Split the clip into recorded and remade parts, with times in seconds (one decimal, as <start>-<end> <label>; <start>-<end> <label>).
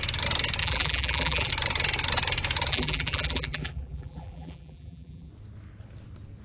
0.0-0.6 recorded; 0.6-1.5 remade; 1.5-2.7 recorded; 2.7-5.3 remade; 5.3-6.4 recorded